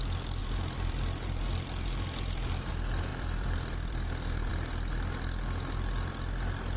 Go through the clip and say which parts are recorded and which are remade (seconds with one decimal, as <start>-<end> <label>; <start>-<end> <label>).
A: 0.0-0.4 recorded; 0.4-2.7 remade; 2.7-3.1 recorded; 3.1-4.5 remade; 4.5-6.8 recorded